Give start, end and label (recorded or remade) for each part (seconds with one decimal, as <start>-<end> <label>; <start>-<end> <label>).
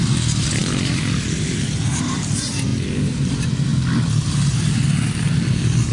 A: 0.0-5.9 recorded